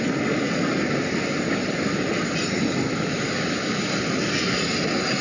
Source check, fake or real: real